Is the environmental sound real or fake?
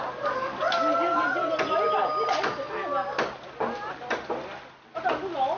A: real